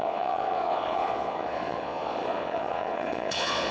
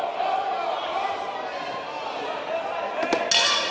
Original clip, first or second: second